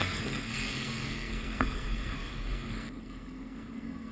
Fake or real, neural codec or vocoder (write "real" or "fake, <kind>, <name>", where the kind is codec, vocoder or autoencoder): fake, codec, SNAC